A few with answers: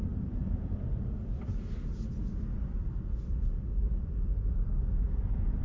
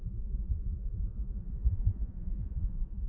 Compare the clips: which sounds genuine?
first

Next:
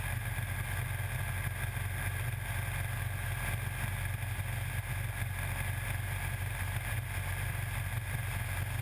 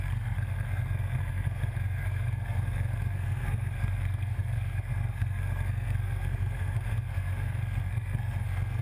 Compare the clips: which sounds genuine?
first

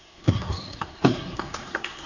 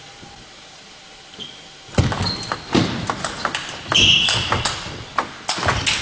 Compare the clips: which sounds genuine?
second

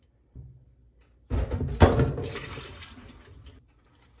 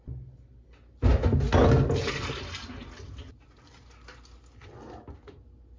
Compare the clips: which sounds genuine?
second